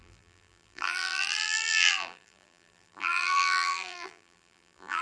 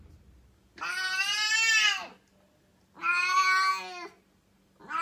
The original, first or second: second